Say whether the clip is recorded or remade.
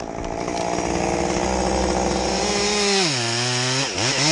recorded